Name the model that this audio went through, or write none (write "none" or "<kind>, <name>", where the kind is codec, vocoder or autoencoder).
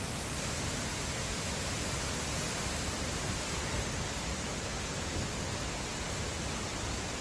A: none